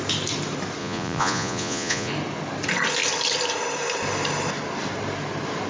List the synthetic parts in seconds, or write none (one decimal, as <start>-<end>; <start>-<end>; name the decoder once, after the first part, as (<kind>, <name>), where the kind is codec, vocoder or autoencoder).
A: 0.8-2.1 (vocoder, Vocos)